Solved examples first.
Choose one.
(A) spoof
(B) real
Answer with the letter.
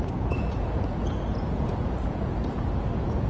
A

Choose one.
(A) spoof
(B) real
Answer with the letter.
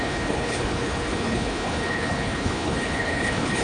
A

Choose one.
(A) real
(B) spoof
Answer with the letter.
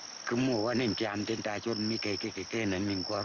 A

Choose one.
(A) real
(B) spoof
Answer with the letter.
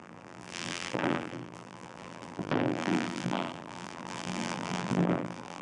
B